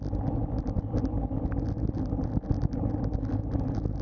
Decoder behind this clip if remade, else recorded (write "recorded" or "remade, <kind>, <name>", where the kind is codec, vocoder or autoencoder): recorded